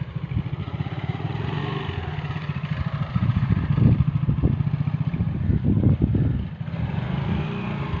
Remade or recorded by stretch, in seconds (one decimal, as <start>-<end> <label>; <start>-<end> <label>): 0.0-0.6 recorded; 0.6-1.6 remade; 1.6-3.1 recorded; 3.1-3.6 remade; 3.6-8.0 recorded